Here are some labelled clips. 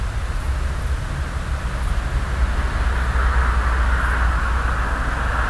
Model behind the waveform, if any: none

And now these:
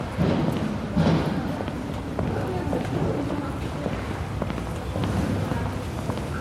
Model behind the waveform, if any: none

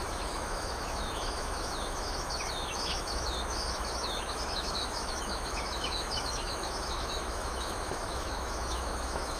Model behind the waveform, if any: autoencoder, DAC-VAE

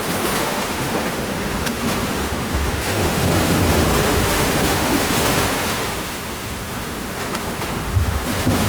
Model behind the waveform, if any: autoencoder, DAC-VAE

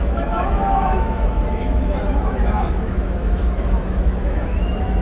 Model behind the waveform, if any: autoencoder, DAC-VAE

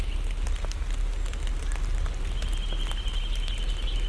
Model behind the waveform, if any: none